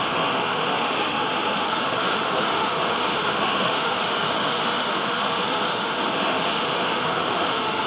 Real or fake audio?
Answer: fake